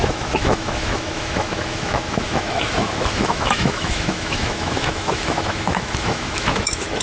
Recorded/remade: remade